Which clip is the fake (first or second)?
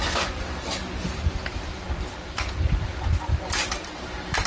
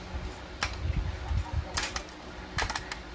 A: first